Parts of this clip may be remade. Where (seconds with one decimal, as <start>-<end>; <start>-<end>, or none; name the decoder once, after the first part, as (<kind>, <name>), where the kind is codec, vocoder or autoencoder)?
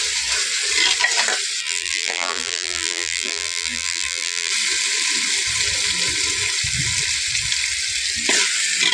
1.6-4.5 (vocoder, BigVGAN v2)